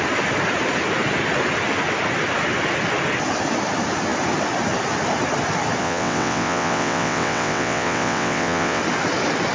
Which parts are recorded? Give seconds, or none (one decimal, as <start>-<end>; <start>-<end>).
0.0-5.8; 8.8-9.5